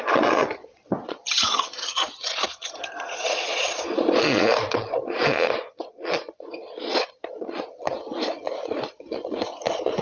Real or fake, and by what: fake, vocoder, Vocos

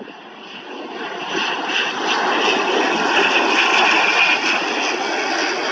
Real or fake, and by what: real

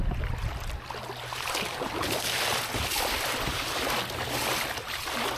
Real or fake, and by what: real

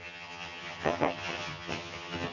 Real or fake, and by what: fake, vocoder, HiFi-GAN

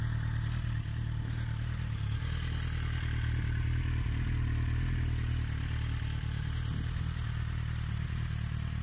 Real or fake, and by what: real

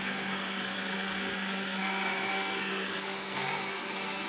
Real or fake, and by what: fake, codec, SNAC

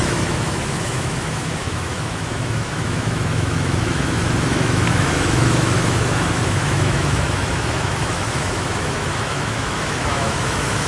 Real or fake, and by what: fake, autoencoder, DAC-VAE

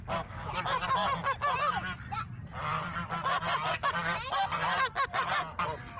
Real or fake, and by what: real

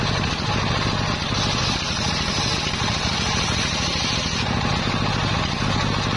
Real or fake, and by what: real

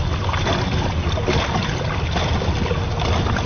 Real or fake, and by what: real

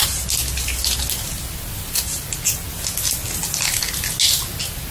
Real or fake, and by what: real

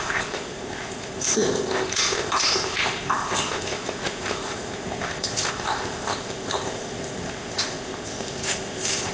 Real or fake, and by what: fake, codec, ZipCodec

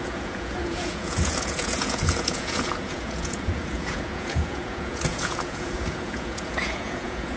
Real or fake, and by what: fake, vocoder, Vocos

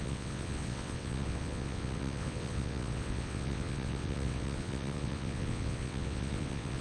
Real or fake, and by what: fake, vocoder, WaveNeXt